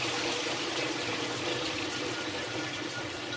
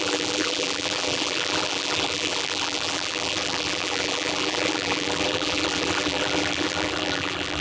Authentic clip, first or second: first